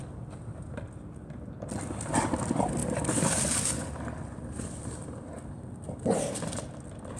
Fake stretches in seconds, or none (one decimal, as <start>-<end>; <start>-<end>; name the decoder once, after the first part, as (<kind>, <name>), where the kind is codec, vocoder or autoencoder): 2.8-3.9 (vocoder, BigVGAN v2)